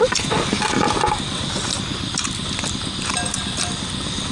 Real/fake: real